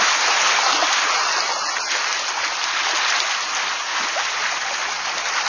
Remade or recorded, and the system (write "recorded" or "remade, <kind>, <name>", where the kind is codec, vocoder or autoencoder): recorded